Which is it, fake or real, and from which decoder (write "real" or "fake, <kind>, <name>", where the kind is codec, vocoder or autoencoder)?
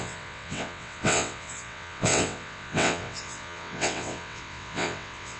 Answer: fake, vocoder, WaveNeXt